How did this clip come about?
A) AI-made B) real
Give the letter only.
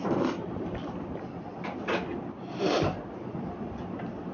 B